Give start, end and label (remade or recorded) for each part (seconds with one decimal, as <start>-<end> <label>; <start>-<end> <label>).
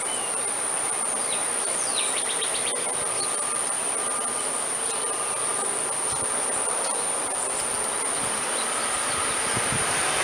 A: 0.0-10.2 recorded